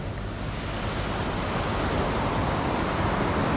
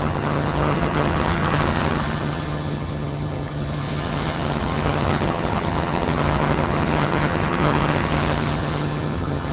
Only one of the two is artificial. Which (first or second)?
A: second